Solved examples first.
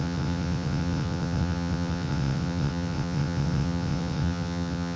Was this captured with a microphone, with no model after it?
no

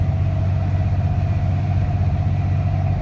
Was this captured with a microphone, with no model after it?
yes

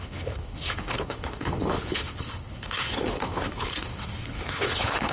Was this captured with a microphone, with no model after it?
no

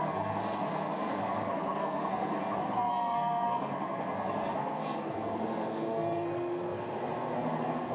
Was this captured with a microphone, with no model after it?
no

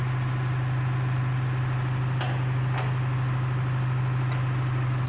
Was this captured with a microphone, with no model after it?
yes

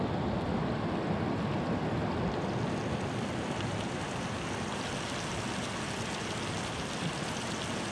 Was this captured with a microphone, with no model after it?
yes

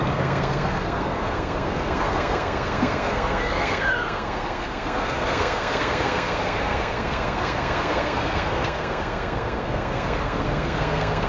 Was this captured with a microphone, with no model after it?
no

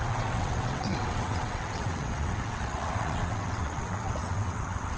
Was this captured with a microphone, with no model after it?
no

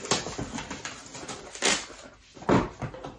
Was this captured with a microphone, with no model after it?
yes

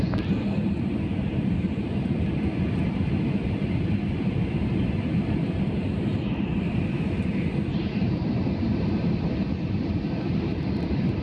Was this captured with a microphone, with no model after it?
no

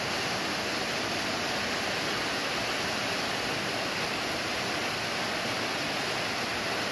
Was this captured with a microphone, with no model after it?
yes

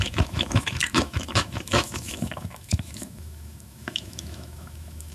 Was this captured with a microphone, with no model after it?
no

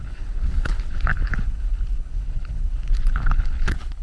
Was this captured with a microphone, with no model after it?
no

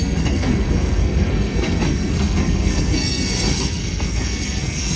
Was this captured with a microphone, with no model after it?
no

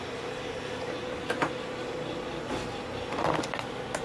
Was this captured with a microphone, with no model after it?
yes